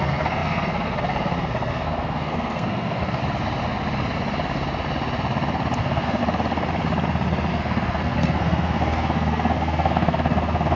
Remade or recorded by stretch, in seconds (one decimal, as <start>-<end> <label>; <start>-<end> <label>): 0.0-3.2 remade; 3.2-5.8 recorded; 5.8-6.2 remade; 6.2-7.5 recorded; 7.5-10.8 remade